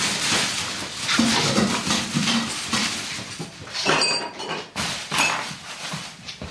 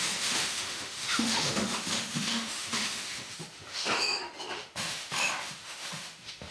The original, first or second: first